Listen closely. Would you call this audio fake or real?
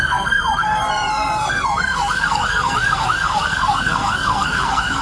fake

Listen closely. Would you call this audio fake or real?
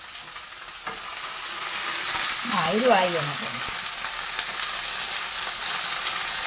real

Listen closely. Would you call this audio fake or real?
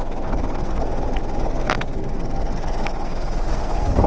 fake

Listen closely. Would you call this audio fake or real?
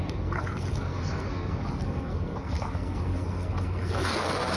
fake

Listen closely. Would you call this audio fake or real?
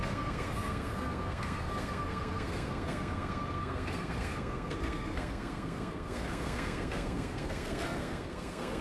fake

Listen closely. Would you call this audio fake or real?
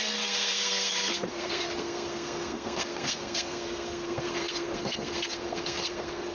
fake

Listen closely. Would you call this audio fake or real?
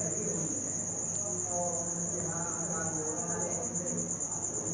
real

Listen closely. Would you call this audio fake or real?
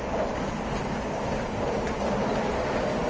real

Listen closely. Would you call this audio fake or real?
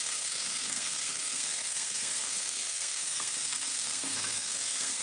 fake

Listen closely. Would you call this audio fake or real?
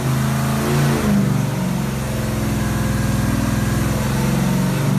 real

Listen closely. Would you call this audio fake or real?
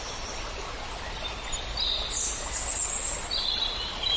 real